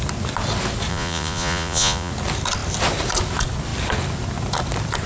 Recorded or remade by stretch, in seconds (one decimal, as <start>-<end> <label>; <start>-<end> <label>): 0.0-0.9 recorded; 0.9-2.1 remade; 2.1-5.1 recorded

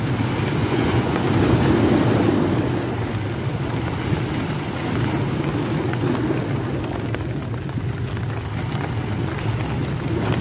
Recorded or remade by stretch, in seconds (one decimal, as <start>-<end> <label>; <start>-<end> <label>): 0.0-0.6 recorded; 0.6-1.2 remade; 1.2-10.4 recorded

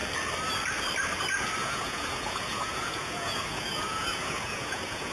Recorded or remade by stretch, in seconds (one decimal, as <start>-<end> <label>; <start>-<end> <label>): 0.0-1.6 recorded; 1.6-5.1 remade

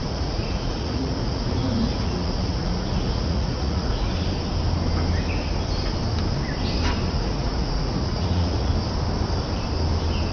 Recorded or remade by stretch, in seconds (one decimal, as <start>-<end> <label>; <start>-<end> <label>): 0.0-4.1 remade; 4.1-7.1 recorded; 7.1-8.7 remade; 8.7-10.3 recorded

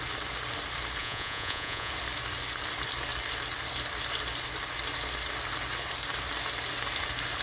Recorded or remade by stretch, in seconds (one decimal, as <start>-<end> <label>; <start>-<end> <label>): 0.0-1.0 recorded; 1.0-1.9 remade; 1.9-7.4 recorded